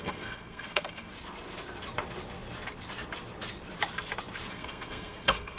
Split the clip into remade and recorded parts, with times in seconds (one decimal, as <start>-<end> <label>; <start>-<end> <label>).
0.0-1.1 remade; 1.1-4.5 recorded; 4.5-5.6 remade